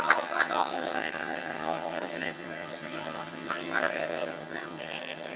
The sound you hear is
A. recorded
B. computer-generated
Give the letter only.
B